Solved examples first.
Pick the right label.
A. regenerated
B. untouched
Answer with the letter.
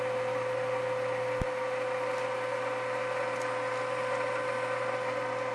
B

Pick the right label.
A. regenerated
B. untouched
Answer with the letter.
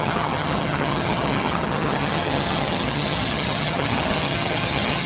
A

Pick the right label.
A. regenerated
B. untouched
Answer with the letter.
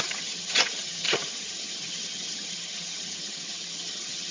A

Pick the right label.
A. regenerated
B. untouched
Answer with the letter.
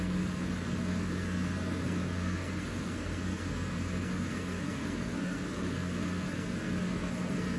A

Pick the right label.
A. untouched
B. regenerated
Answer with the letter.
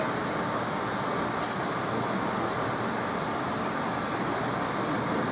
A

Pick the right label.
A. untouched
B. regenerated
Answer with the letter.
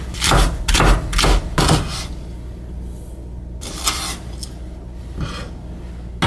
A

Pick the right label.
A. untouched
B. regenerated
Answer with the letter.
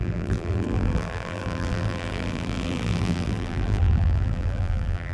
B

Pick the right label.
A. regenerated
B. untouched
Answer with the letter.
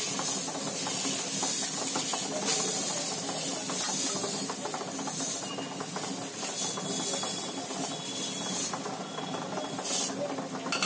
B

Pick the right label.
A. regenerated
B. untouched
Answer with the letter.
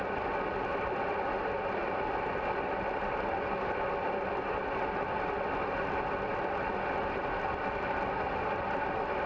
B